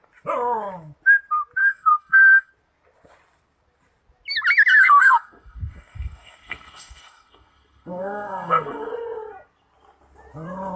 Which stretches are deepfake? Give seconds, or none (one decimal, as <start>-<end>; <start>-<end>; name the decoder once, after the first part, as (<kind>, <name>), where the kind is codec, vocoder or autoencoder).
1.6-2.5 (codec, SNAC); 4.7-8.9